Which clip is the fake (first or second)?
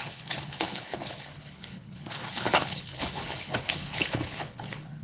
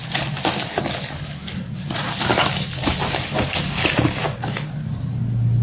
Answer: first